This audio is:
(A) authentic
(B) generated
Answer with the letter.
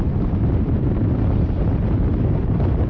A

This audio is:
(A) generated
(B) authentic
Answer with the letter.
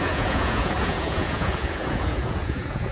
A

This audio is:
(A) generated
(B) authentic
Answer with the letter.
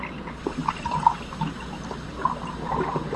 B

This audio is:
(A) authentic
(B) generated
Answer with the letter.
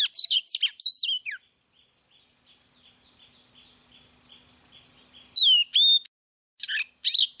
A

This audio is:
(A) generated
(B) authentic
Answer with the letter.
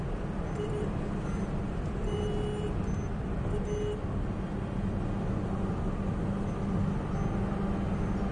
B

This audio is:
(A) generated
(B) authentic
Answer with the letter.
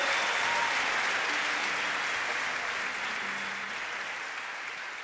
B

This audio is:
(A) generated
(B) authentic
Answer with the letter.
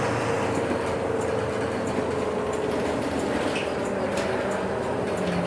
B